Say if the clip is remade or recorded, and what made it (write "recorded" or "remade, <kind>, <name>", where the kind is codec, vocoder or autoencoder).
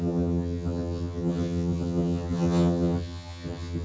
remade, vocoder, HiFi-GAN